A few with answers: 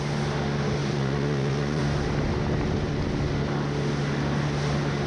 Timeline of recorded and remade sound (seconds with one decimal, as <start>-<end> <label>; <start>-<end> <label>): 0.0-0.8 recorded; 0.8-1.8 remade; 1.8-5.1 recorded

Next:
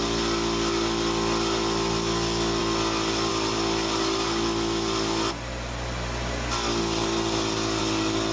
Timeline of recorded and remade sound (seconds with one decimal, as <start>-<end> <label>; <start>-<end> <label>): 0.0-8.3 recorded

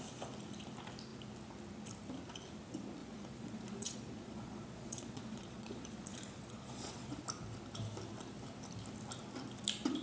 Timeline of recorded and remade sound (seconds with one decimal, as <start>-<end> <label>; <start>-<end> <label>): 0.0-3.0 recorded; 3.0-7.2 remade; 7.2-10.0 recorded

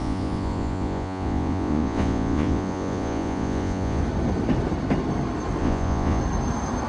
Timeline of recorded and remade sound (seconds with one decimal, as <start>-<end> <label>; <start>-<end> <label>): 0.0-4.0 remade; 4.0-5.6 recorded; 5.6-6.2 remade; 6.2-6.9 recorded

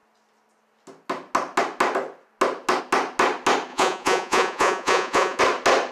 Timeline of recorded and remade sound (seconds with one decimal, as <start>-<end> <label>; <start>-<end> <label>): 0.0-3.7 recorded; 3.7-5.4 remade; 5.4-5.9 recorded